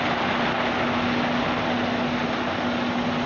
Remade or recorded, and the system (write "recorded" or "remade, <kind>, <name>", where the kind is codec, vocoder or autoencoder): recorded